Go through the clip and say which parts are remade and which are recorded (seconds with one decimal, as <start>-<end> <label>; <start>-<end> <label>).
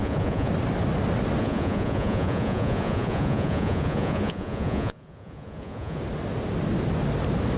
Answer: 0.0-0.5 remade; 0.5-1.4 recorded; 1.4-6.0 remade; 6.0-7.6 recorded